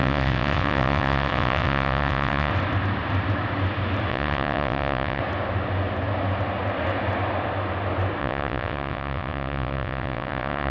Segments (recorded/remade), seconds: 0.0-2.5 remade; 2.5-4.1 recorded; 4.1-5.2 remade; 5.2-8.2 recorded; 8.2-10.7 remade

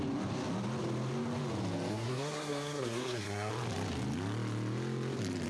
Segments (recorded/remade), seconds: 0.0-1.9 recorded; 1.9-3.5 remade; 3.5-5.5 recorded

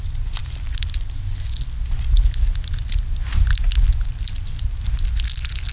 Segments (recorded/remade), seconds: 0.0-5.7 recorded